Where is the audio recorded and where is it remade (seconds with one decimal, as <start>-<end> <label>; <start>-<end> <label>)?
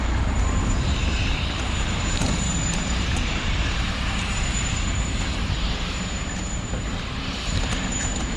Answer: 0.0-1.0 remade; 1.0-1.5 recorded; 1.5-8.4 remade